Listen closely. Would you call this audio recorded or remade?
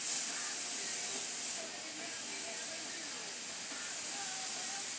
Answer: recorded